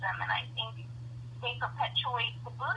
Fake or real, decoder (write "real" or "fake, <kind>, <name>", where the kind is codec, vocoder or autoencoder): real